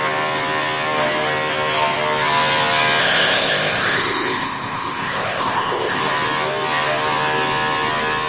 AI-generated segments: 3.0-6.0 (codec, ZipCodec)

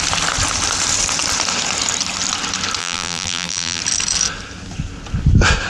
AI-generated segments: 2.8-3.8 (vocoder, BigVGAN v2)

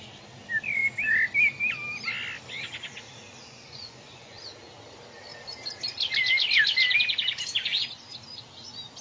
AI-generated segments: 3.4-4.4 (vocoder, Vocos)

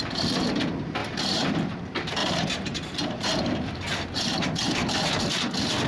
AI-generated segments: 1.0-1.7 (vocoder, BigVGAN v2); 2.2-5.2

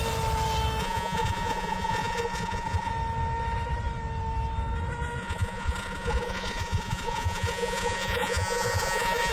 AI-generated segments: 0.8-2.9 (vocoder, Vocos); 5.2-9.3

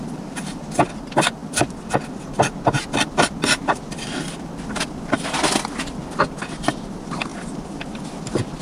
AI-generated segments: none

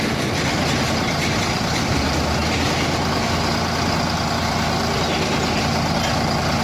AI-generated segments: 0.0-2.4 (vocoder, BigVGAN v2); 6.1-6.6

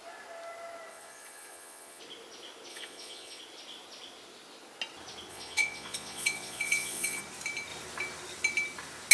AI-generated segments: 0.9-2.0 (vocoder, Vocos); 2.7-3.4; 5.3-7.2